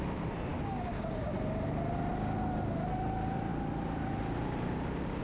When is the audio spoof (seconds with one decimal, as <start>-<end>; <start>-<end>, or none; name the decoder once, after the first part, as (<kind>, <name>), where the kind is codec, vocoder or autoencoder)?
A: none